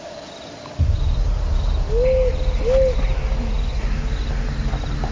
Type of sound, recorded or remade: recorded